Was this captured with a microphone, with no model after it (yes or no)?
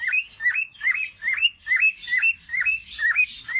yes